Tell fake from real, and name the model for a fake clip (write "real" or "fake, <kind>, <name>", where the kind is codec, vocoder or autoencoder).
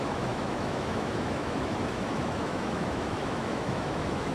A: fake, autoencoder, DAC-VAE